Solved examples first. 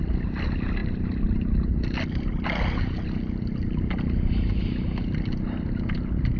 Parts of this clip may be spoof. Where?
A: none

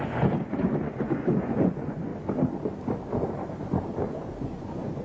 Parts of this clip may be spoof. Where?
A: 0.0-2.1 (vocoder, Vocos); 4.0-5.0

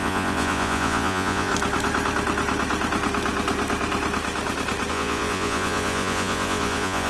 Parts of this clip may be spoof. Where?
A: 0.0-1.5 (vocoder, Vocos); 4.9-7.1

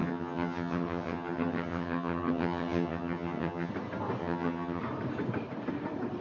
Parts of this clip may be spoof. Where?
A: 0.0-3.7 (vocoder, HiFi-GAN); 4.2-4.8

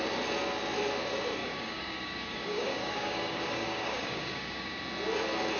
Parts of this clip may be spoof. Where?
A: 1.4-4.8 (codec, DAC)